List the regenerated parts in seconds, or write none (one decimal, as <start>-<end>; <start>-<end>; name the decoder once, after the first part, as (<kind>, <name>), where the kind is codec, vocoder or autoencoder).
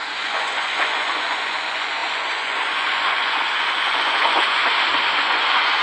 0.0-4.6 (vocoder, Vocos); 5.2-5.8